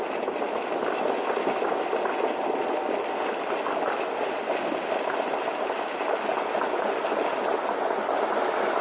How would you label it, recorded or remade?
recorded